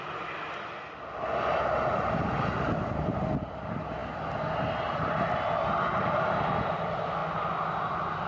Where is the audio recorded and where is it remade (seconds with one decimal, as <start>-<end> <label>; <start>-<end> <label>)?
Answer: 0.0-8.3 recorded